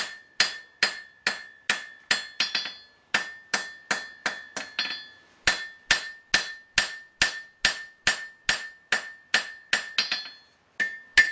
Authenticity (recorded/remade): recorded